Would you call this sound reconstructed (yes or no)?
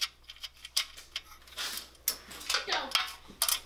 no